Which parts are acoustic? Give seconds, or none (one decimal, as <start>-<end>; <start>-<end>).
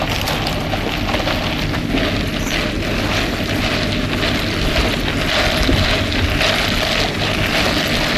0.0-8.2